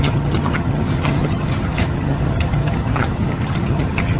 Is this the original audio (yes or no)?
no